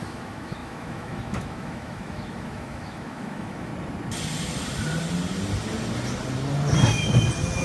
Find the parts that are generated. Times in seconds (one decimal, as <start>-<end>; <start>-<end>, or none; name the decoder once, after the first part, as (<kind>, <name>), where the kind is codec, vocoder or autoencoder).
0.0-3.7 (autoencoder, DAC-VAE)